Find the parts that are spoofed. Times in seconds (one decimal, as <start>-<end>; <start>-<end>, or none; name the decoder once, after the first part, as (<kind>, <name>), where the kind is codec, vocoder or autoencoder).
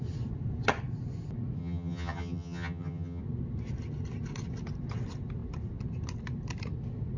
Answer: 1.6-3.2 (vocoder, HiFi-GAN)